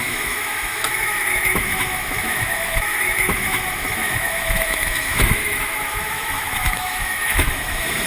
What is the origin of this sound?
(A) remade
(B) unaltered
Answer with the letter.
A